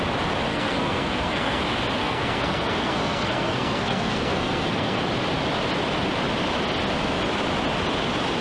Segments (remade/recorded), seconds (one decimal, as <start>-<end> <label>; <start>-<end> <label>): 0.0-0.5 recorded; 0.5-1.6 remade; 1.6-2.0 recorded; 2.0-5.0 remade; 5.0-8.4 recorded